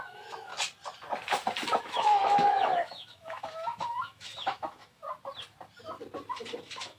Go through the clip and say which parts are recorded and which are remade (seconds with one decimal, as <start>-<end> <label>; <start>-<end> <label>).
0.0-0.5 remade; 0.5-1.8 recorded; 1.8-5.0 remade; 5.0-6.6 recorded; 6.6-7.0 remade